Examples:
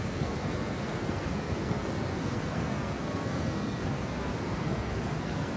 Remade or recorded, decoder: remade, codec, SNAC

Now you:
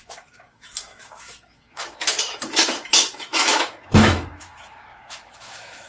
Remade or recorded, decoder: remade, autoencoder, DAC-VAE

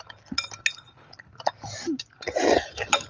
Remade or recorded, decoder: recorded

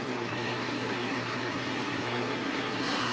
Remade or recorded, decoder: remade, codec, SNAC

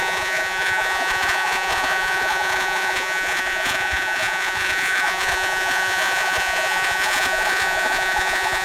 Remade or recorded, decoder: remade, vocoder, Vocos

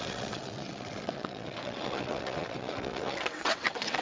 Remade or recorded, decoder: remade, vocoder, WaveNeXt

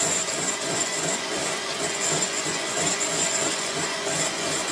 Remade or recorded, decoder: remade, vocoder, Vocos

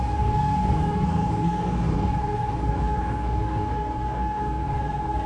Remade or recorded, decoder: remade, codec, DAC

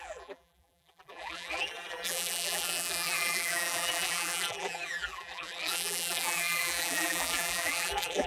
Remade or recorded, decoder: remade, vocoder, BigVGAN v2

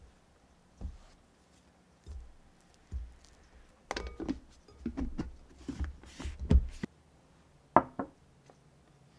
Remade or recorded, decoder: recorded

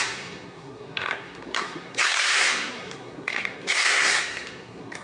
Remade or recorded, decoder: remade, codec, SNAC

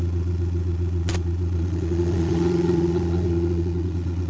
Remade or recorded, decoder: remade, vocoder, Vocos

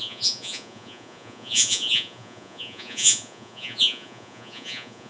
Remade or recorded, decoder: remade, vocoder, Vocos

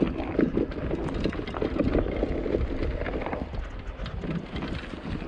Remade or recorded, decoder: recorded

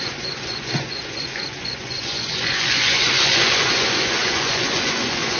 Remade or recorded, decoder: remade, vocoder, Vocos